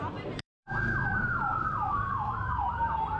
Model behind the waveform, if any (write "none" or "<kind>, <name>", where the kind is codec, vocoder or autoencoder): vocoder, BigVGAN v2